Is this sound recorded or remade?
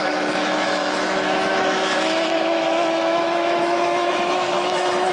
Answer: remade